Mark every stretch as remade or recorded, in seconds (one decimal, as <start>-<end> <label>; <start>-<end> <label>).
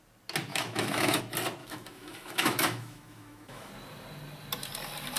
0.0-0.5 recorded; 0.5-1.2 remade; 1.2-1.6 recorded; 1.6-3.7 remade; 3.7-5.2 recorded